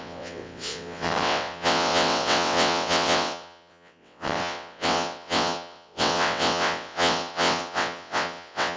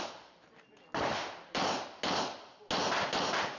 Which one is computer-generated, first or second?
first